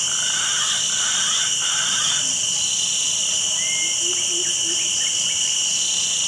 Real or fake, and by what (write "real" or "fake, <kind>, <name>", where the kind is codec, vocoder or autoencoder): real